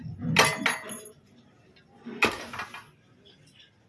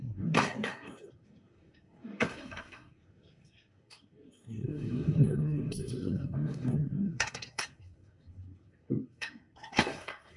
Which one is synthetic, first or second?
second